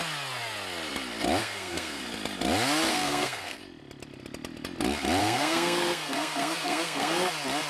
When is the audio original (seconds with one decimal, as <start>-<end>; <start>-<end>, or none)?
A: 0.0-1.4; 2.0-2.9; 3.6-5.2; 7.3-7.7